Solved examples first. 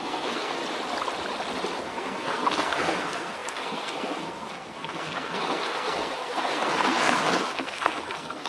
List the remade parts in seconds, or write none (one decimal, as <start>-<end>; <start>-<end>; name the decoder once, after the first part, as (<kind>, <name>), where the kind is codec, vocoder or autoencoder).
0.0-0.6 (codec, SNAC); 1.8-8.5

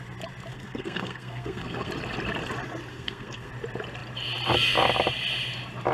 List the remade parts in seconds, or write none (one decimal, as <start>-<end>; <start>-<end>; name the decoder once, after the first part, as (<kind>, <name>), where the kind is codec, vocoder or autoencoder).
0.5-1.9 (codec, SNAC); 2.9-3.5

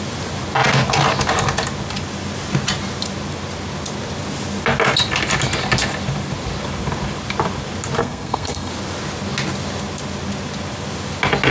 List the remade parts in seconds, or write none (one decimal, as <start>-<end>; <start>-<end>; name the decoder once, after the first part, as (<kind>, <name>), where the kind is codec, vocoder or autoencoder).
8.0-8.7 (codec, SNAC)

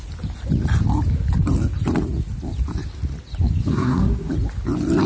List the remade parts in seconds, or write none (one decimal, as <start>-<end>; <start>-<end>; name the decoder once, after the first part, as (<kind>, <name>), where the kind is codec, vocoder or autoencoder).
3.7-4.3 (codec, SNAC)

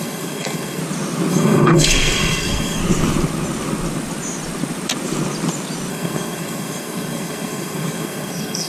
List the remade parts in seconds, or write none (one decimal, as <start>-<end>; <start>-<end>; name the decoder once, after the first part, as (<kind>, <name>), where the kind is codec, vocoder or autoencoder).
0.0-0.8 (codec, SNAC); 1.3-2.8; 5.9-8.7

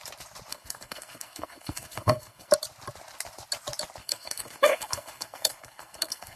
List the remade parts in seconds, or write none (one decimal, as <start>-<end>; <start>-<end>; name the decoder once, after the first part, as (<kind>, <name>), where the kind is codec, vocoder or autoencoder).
0.5-2.5 (codec, SNAC); 4.0-6.4